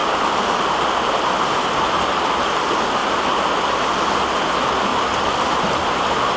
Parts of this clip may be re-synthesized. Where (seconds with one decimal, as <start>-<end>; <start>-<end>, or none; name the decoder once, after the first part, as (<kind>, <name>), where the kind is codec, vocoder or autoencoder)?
none